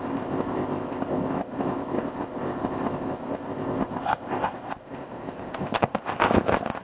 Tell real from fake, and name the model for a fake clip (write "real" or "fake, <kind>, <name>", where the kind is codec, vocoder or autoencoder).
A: fake, codec, ZipCodec